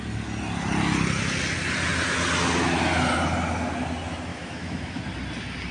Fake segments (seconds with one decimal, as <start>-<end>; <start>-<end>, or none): 4.3-5.0